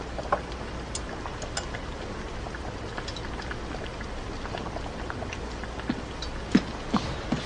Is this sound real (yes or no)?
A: yes